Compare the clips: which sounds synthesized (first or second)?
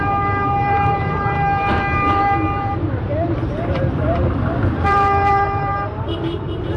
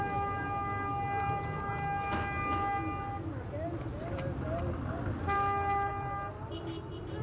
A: first